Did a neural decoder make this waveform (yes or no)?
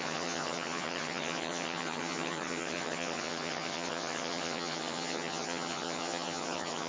yes